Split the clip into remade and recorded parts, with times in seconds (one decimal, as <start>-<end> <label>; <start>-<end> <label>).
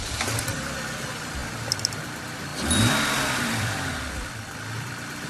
0.0-5.3 remade